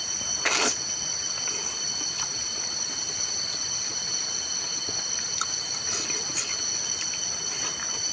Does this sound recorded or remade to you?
recorded